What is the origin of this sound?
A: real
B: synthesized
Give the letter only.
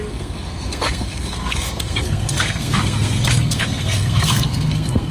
B